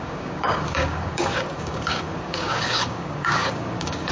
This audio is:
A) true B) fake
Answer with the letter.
B